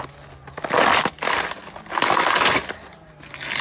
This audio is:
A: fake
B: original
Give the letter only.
B